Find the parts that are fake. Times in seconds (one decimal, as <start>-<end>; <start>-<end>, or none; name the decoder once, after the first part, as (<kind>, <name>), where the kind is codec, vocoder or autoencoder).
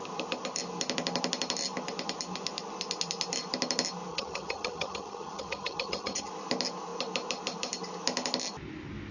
4.1-6.3 (vocoder, HiFi-GAN)